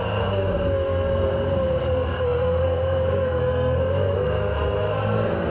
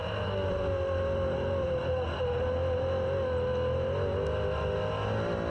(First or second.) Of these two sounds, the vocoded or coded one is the first